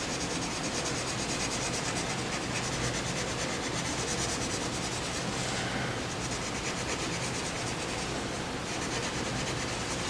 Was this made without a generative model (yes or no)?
yes